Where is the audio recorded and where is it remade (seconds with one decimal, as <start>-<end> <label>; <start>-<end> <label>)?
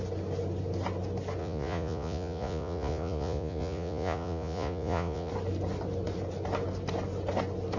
0.0-1.4 recorded; 1.4-5.3 remade; 5.3-7.8 recorded